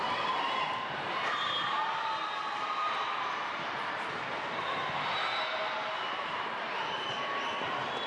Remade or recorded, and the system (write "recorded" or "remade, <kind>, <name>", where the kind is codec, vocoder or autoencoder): remade, vocoder, BigVGAN v2